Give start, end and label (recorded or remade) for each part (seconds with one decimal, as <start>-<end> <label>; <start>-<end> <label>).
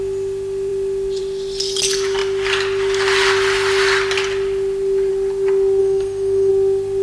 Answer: 0.0-5.8 recorded; 5.8-6.5 remade; 6.5-7.0 recorded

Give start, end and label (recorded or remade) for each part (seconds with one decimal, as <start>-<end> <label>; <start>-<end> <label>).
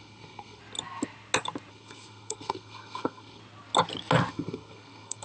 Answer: 0.0-0.6 remade; 0.6-1.7 recorded; 1.7-3.4 remade; 3.4-4.3 recorded; 4.3-5.2 remade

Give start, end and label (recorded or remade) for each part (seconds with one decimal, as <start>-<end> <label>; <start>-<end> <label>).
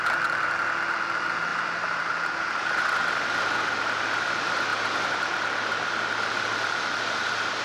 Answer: 0.0-1.5 recorded; 1.5-2.1 remade; 2.1-7.6 recorded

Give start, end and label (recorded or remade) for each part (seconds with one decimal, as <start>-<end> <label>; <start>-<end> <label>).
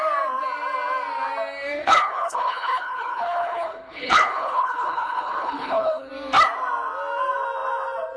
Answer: 0.0-1.8 recorded; 1.8-6.1 remade; 6.1-8.2 recorded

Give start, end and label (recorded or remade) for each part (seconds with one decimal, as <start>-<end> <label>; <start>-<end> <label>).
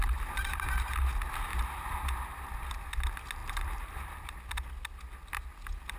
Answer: 0.0-1.5 recorded; 1.5-2.7 remade; 2.7-3.4 recorded; 3.4-4.4 remade; 4.4-6.0 recorded